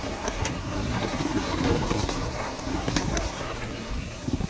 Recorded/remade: remade